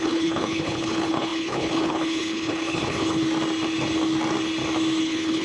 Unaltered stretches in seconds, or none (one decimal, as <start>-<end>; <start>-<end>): 3.2-5.0